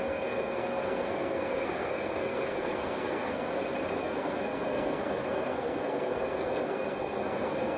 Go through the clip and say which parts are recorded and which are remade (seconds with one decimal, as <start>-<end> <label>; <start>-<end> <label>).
0.0-3.5 remade; 3.5-4.0 recorded; 4.0-7.8 remade